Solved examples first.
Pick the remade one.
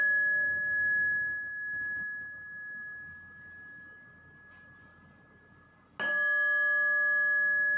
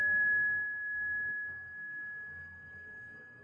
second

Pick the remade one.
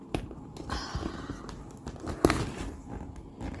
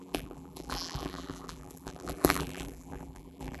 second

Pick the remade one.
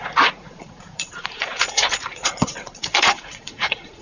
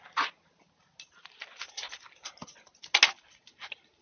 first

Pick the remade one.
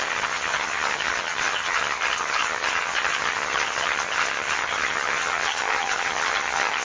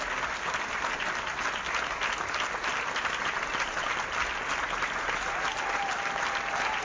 first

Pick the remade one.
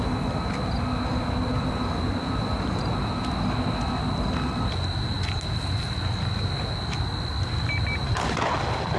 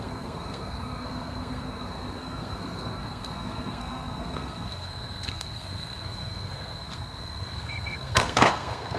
second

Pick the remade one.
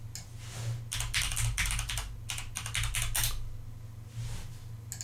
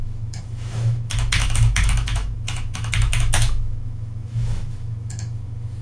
second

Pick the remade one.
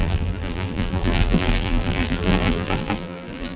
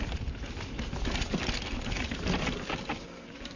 first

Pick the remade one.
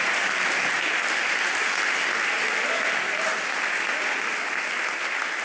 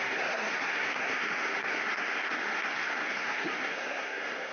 second